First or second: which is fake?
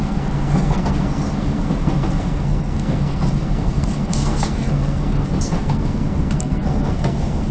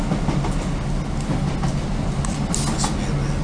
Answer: first